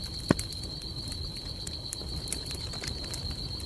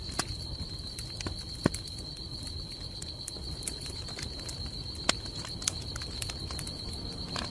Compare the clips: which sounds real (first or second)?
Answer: second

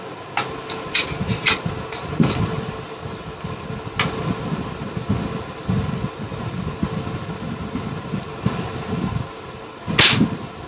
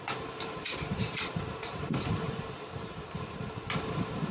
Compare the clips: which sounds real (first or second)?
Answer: first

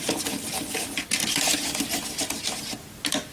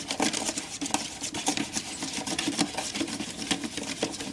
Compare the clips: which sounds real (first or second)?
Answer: first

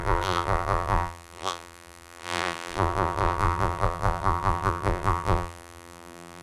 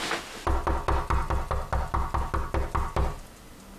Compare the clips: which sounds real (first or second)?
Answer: second